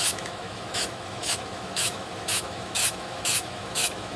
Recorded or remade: remade